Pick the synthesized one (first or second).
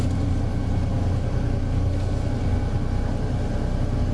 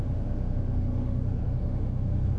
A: second